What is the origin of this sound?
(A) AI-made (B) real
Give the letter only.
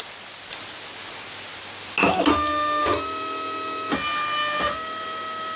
B